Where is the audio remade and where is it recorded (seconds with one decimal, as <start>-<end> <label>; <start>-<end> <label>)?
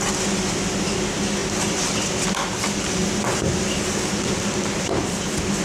0.0-5.6 recorded